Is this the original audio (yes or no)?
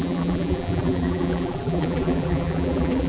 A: no